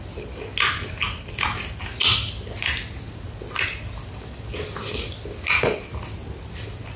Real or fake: real